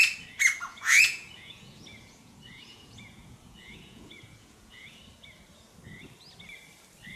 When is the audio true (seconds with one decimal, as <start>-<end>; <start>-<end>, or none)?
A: 0.0-0.7; 5.0-7.2